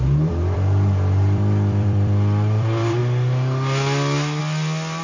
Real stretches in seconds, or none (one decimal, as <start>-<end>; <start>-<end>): 3.0-4.4